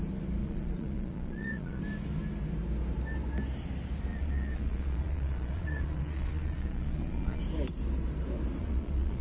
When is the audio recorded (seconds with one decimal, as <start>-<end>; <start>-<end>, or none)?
0.0-0.4; 1.8-4.1; 7.4-8.6